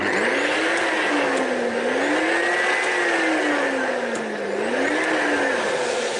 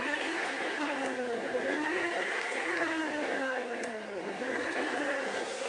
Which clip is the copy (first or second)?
second